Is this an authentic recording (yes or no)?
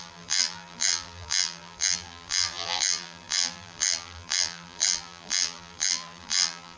no